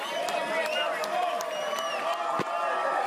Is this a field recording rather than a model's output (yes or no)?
yes